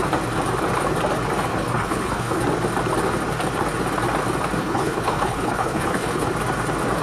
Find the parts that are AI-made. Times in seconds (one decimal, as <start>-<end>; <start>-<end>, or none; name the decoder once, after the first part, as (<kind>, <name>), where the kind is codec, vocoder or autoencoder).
1.5-2.4 (codec, HILCodec); 4.6-6.3